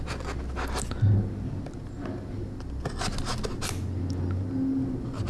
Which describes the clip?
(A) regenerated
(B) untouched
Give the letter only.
B